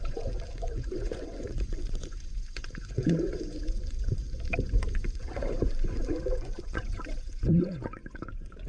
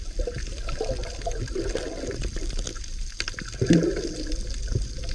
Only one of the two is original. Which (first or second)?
second